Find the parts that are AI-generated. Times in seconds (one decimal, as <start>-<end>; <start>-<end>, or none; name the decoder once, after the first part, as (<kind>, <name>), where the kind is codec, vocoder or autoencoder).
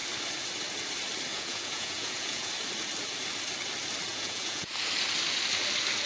1.3-2.5 (vocoder, Vocos); 4.1-4.7